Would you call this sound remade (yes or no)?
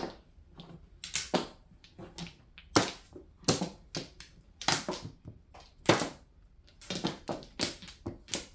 no